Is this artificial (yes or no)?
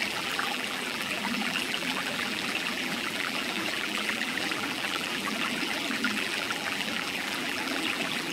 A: yes